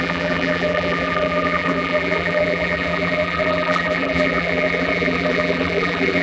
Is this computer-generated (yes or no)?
yes